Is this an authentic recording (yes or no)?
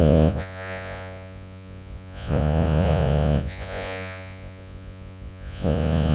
no